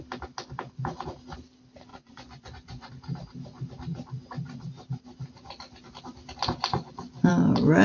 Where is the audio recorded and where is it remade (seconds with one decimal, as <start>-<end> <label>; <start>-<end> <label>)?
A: 0.0-1.9 recorded; 1.9-2.9 remade; 2.9-6.7 recorded; 6.7-7.3 remade; 7.3-7.8 recorded